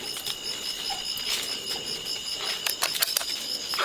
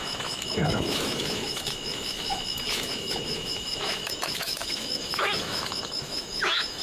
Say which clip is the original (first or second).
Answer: first